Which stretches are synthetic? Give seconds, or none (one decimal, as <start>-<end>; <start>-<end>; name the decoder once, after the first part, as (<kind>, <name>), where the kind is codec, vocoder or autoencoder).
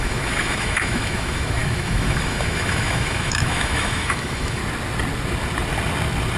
0.0-4.6 (autoencoder, DAC-VAE)